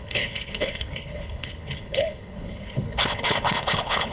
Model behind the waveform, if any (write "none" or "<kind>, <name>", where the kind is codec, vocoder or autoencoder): codec, HILCodec